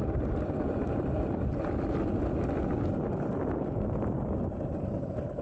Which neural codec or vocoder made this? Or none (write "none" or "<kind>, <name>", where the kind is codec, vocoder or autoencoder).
none